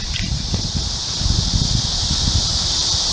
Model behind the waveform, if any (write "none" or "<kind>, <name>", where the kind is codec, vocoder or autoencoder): none